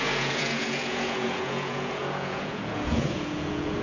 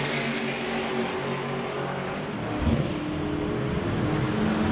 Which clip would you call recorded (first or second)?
second